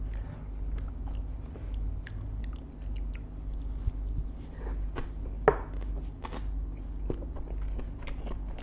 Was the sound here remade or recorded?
recorded